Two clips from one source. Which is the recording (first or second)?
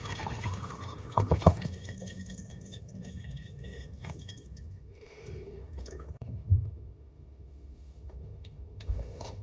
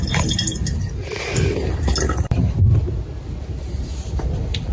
second